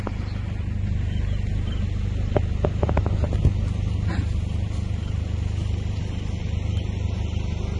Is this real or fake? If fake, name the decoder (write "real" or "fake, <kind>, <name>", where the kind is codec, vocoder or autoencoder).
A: real